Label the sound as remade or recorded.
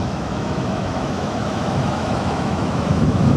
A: remade